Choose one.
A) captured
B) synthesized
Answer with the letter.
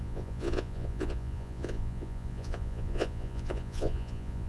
B